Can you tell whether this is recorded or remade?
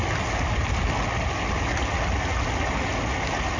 recorded